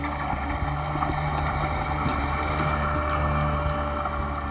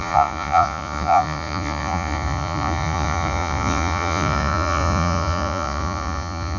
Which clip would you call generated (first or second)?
second